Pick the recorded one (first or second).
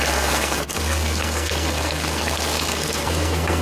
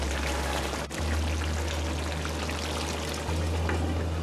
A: second